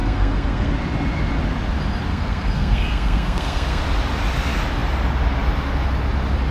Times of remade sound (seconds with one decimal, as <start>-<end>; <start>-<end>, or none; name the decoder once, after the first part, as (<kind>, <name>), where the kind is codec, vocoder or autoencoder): 0.0-0.7 (codec, SNAC); 2.1-3.8